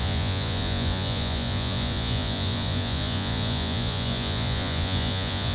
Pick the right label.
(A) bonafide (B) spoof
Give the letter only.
B